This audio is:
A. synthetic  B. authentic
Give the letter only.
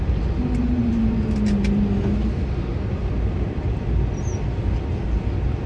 B